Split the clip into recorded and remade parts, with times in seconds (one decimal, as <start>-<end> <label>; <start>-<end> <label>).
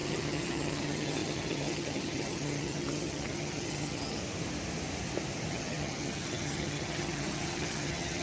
0.0-4.2 remade; 4.2-5.5 recorded; 5.5-8.2 remade